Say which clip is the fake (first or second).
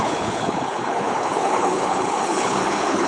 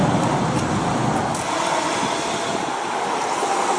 first